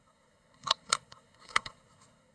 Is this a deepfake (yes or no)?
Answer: yes